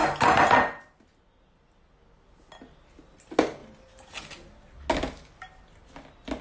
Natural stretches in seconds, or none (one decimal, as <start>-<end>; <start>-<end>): 0.0-6.4